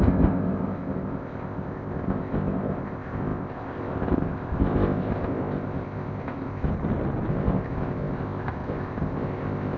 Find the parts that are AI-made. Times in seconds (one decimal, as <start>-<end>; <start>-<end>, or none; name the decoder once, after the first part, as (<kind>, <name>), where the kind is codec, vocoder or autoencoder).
0.0-6.7 (codec, ZipCodec); 7.3-9.8